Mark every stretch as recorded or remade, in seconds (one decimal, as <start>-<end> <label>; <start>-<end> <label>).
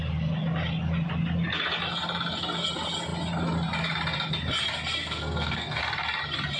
0.0-5.0 recorded; 5.0-5.8 remade; 5.8-6.6 recorded